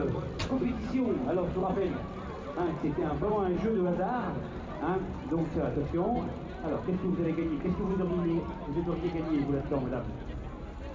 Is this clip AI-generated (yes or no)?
no